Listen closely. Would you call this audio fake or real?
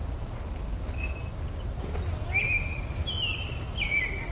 real